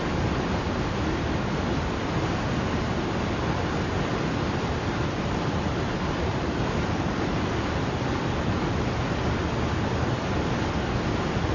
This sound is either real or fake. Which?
real